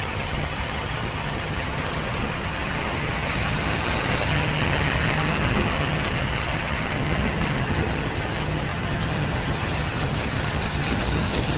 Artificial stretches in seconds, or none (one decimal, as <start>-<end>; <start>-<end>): 0.0-11.6